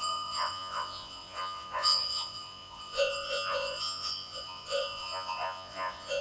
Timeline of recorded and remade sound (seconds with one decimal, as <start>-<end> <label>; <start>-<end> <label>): 0.0-6.2 remade